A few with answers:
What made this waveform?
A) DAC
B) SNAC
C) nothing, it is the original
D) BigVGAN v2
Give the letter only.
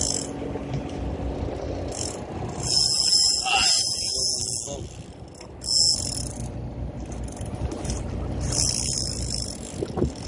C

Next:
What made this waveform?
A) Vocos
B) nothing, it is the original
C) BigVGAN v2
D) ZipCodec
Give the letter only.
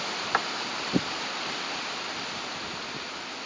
C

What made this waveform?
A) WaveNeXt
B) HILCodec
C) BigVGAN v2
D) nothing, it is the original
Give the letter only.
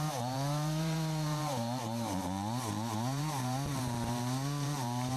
C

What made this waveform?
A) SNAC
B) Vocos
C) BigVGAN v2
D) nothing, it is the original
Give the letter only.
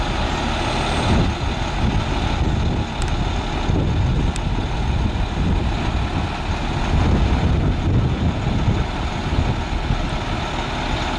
D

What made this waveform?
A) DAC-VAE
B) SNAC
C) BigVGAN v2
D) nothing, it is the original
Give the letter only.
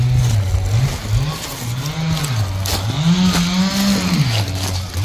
D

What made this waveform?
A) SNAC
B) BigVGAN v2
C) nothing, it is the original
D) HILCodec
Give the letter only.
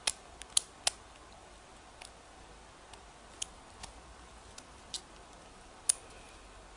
C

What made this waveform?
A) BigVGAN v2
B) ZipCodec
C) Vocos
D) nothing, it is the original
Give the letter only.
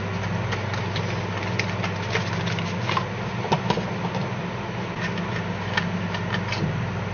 D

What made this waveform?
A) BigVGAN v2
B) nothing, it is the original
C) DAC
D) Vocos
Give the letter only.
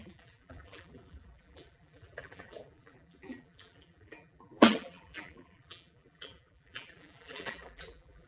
A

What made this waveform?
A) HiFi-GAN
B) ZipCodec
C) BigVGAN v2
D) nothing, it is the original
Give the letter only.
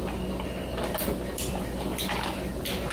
D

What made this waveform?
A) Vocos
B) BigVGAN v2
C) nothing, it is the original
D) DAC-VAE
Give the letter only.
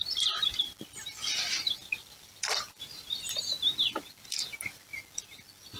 B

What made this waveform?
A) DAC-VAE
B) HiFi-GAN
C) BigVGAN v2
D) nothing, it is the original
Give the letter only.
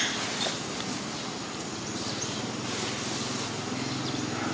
D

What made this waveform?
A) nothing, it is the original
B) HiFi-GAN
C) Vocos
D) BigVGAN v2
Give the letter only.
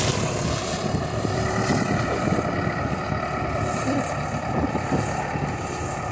D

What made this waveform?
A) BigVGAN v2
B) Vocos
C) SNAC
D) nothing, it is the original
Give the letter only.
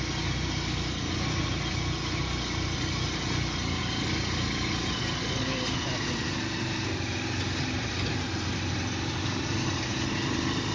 D